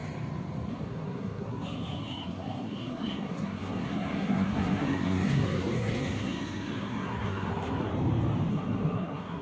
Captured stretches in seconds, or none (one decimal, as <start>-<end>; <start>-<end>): 0.0-0.7; 7.9-8.5